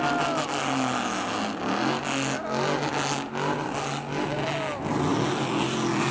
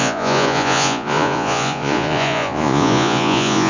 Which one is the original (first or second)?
first